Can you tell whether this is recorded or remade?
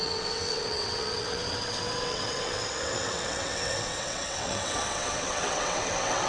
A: remade